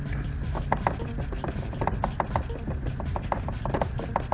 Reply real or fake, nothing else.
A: real